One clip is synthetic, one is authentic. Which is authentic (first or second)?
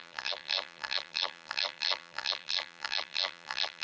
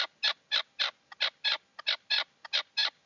second